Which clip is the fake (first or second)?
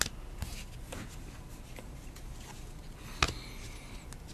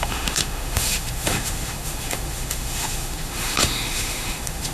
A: second